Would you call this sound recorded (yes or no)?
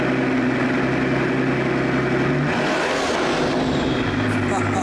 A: yes